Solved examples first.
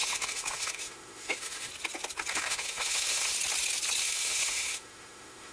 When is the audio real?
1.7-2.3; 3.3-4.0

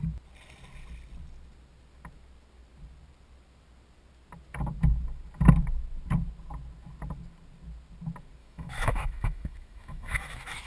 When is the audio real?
0.0-8.4

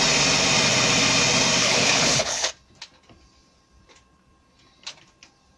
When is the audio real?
0.0-1.6; 2.5-5.6

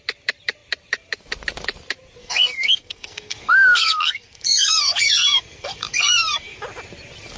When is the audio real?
0.0-2.2; 6.6-7.4

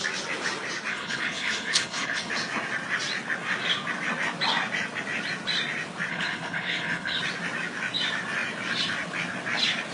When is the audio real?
0.0-0.9; 2.3-6.1; 7.2-9.9

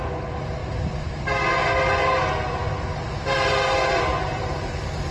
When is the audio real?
0.0-5.1